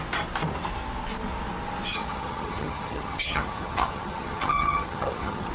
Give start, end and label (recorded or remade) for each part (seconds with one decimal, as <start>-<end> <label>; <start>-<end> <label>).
0.0-1.9 recorded; 1.9-5.5 remade